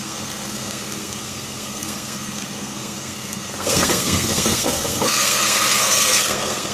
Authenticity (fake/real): fake